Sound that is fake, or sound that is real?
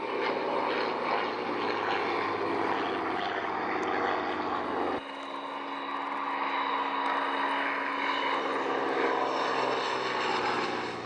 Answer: real